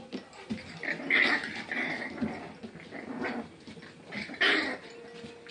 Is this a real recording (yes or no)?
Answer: yes